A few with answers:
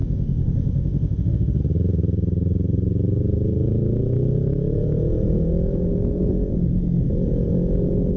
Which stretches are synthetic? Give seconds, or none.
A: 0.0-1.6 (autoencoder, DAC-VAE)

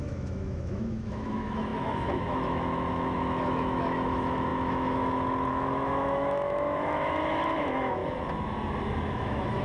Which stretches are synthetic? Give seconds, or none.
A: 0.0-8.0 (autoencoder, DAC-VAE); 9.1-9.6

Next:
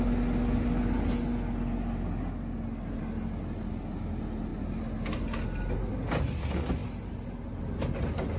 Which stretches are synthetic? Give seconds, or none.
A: none

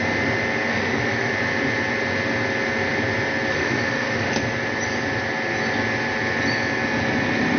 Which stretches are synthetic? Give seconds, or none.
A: 0.7-1.3 (autoencoder, DAC-VAE); 3.5-4.3